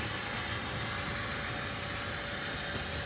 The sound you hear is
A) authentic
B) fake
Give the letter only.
A